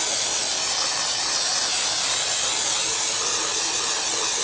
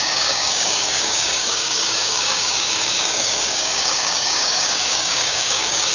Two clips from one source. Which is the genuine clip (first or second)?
first